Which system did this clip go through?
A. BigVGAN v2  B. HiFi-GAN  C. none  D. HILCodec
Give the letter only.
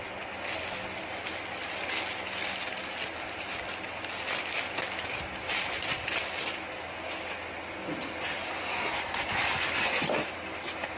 C